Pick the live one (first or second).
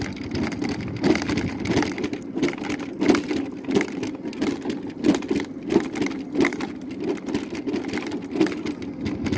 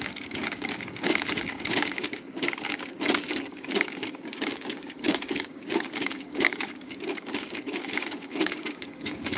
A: first